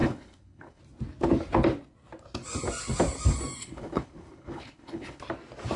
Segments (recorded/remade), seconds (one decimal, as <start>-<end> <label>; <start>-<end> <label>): 0.0-0.8 remade; 0.8-3.6 recorded; 3.6-5.2 remade; 5.2-5.8 recorded